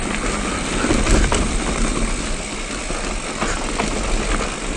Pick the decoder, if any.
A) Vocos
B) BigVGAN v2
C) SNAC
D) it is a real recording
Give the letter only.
D